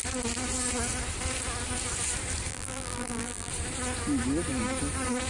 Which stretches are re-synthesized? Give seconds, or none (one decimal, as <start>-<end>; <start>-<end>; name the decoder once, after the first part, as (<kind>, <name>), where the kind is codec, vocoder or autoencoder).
2.5-3.5 (vocoder, BigVGAN v2)